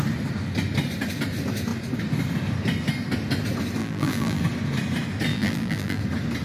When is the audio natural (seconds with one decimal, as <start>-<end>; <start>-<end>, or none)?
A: 0.0-3.8; 4.4-5.3; 6.0-6.4